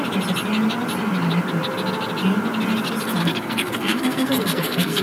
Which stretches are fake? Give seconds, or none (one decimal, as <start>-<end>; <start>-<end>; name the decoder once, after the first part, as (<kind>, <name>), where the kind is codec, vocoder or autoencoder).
3.2-5.0 (codec, SNAC)

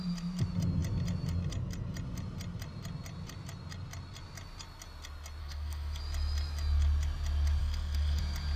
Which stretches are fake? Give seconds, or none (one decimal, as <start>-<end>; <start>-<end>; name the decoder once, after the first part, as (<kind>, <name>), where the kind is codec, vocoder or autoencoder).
5.4-6.0 (codec, SNAC); 7.6-8.2

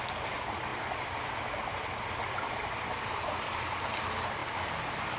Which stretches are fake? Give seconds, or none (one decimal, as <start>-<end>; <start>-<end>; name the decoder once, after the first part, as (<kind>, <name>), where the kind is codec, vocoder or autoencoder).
none